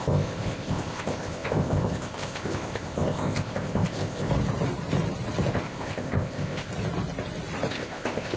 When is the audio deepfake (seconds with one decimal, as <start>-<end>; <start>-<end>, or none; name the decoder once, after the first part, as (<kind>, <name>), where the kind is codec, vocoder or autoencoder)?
0.0-4.3 (codec, ZipCodec); 5.5-6.7; 7.7-8.4